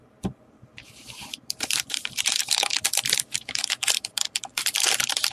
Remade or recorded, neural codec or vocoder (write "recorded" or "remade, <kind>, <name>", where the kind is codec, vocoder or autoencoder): remade, vocoder, BigVGAN v2